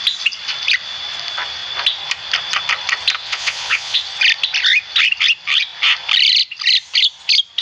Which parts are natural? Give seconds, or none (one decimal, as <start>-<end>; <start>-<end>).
0.0-3.2; 4.0-7.6

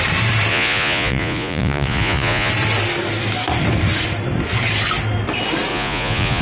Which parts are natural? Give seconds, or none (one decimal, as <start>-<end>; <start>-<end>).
0.0-0.5; 2.5-5.7

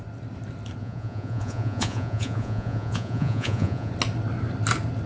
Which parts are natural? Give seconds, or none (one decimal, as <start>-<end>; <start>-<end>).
0.0-0.8; 3.9-5.1